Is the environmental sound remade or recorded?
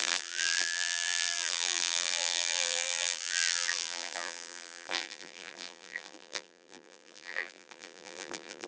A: remade